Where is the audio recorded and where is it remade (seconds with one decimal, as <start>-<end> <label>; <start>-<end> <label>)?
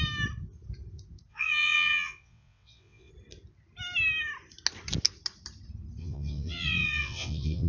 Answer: 0.0-1.3 recorded; 1.3-3.1 remade; 3.1-6.0 recorded; 6.0-7.7 remade